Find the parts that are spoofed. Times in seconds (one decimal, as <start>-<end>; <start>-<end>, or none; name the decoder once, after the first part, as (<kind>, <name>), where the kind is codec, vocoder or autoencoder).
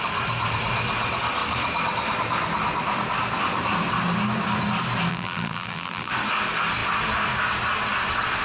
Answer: 5.1-6.1 (vocoder, BigVGAN v2)